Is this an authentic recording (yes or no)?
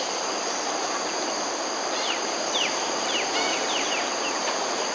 no